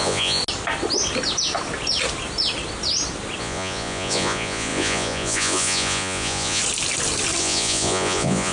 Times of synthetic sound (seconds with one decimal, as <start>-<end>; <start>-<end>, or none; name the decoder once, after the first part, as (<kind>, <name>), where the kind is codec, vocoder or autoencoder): 0.0-0.4 (vocoder, Vocos); 3.4-6.6; 7.4-8.5